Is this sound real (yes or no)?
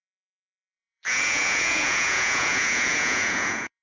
no